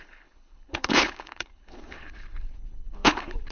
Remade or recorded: remade